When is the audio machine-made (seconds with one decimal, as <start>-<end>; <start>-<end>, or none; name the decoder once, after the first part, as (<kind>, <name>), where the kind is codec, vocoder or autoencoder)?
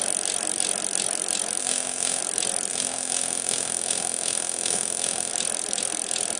1.6-2.2 (autoencoder, DAC-VAE); 2.7-5.3